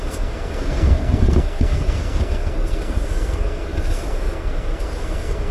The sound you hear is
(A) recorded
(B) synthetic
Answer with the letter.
B